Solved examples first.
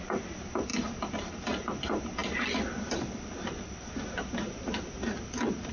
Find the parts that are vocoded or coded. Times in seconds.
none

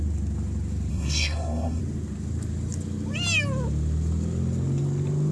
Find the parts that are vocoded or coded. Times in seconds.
0.9-1.8 (codec, SNAC)

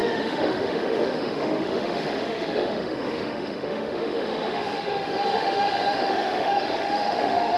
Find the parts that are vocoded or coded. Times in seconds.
0.0-7.6 (autoencoder, DAC-VAE)